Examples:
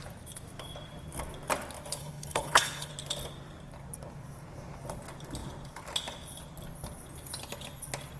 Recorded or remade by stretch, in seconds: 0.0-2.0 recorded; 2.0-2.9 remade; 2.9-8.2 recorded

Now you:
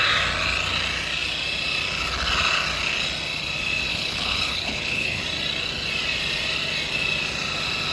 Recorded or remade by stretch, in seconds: 0.0-3.9 recorded; 3.9-5.2 remade; 5.2-7.9 recorded

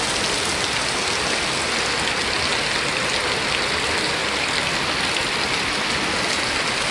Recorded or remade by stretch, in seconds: 0.0-6.9 recorded

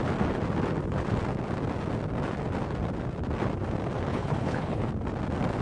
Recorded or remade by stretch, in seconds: 0.0-4.1 recorded; 4.1-4.9 remade; 4.9-5.6 recorded

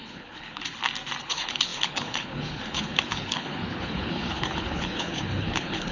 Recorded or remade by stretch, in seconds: 0.0-0.6 remade; 0.6-1.2 recorded; 1.2-5.9 remade